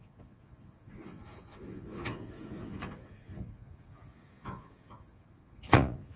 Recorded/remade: remade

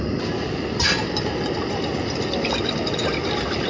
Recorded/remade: recorded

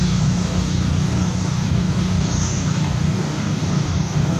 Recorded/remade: remade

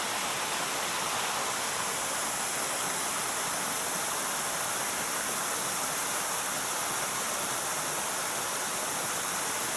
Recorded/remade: recorded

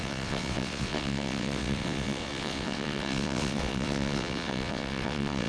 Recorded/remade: remade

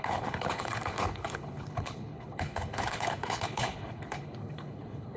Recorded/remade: remade